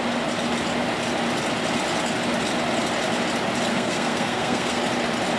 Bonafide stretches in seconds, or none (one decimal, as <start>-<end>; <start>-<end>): 0.0-3.7; 4.8-5.4